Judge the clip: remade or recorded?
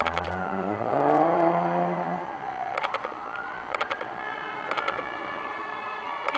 remade